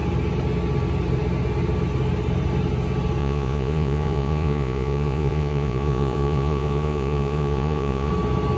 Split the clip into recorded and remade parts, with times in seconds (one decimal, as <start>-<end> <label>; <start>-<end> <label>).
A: 0.0-3.2 recorded; 3.2-8.1 remade; 8.1-8.6 recorded